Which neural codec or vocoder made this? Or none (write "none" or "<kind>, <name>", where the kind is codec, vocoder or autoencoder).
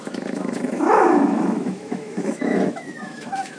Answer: autoencoder, DAC-VAE